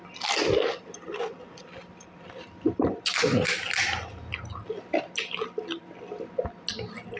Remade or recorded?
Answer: recorded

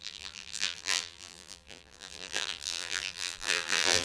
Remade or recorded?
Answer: remade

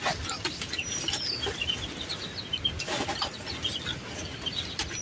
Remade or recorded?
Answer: recorded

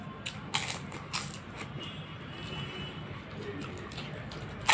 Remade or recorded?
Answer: recorded